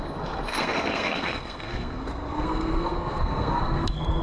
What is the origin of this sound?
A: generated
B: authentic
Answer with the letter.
A